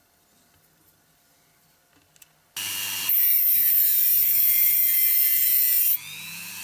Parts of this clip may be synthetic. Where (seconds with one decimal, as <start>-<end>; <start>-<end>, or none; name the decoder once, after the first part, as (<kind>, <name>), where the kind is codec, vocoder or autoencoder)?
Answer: 0.0-1.8 (vocoder, BigVGAN v2); 2.7-5.2; 5.8-6.6